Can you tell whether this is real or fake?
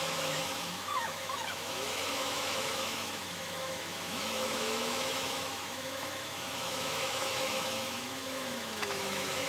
fake